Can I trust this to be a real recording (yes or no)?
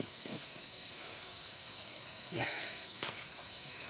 no